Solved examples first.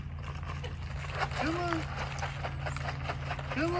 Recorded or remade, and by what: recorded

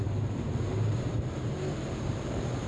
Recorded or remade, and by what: remade, vocoder, BigVGAN v2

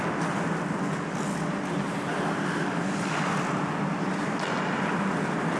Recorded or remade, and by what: recorded